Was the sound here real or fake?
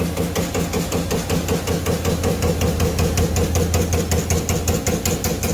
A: real